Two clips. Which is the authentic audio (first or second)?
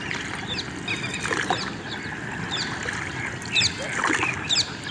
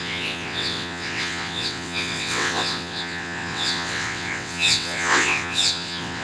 first